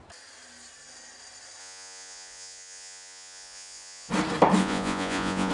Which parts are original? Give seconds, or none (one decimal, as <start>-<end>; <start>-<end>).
0.0-1.6; 4.1-4.6